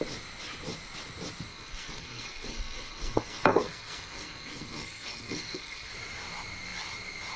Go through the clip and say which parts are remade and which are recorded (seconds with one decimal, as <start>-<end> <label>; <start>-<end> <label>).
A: 0.0-1.5 recorded; 1.5-5.9 remade; 5.9-7.4 recorded